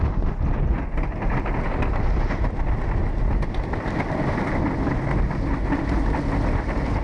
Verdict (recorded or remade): recorded